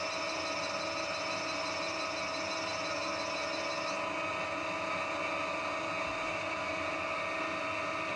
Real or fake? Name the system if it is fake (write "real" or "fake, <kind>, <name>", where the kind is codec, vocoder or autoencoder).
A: real